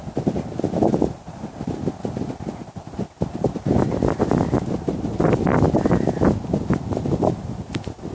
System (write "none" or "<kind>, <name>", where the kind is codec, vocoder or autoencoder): none